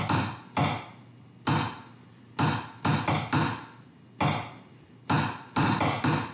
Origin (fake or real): real